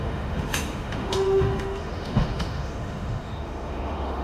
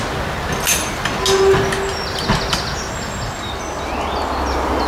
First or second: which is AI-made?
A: first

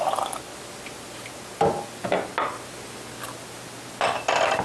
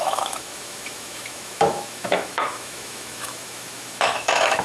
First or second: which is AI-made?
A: second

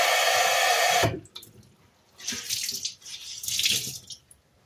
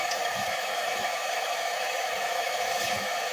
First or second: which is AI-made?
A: second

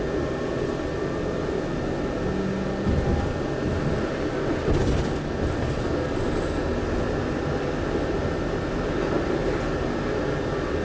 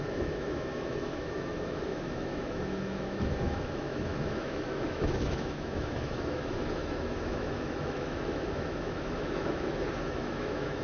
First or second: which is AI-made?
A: second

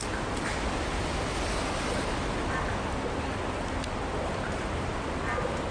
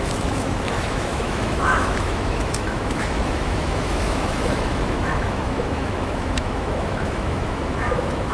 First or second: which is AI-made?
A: second